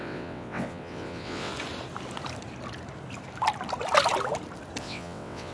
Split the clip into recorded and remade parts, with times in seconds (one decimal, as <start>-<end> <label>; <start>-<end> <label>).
0.0-1.5 remade; 1.5-4.8 recorded; 4.8-5.5 remade